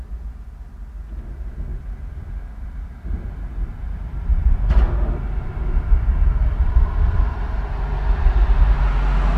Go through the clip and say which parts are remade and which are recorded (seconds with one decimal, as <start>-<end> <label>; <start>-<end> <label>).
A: 0.0-1.7 recorded; 1.7-4.2 remade; 4.2-6.5 recorded; 6.5-7.2 remade; 7.2-9.4 recorded